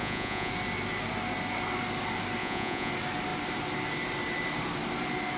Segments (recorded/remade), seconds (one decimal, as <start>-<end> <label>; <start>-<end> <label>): 0.0-0.5 remade; 0.5-2.4 recorded; 2.4-2.9 remade; 2.9-5.4 recorded